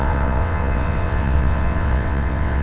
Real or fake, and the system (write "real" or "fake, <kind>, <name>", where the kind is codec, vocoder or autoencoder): fake, vocoder, WaveNeXt